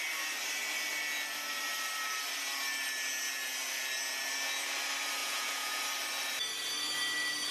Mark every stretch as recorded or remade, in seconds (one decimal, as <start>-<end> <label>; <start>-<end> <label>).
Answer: 0.0-5.2 recorded; 5.2-5.8 remade; 5.8-7.5 recorded